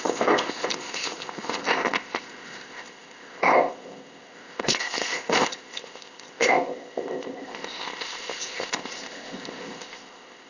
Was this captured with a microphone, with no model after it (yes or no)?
no